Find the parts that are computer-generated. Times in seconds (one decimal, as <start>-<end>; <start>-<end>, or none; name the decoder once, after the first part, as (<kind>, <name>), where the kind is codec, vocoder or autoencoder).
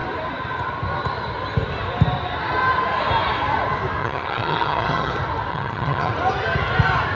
4.0-5.1 (vocoder, HiFi-GAN); 5.5-6.1